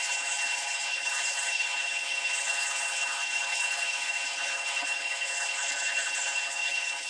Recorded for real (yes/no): no